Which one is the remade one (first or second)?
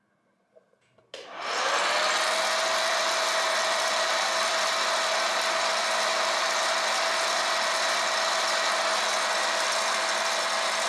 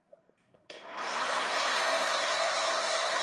second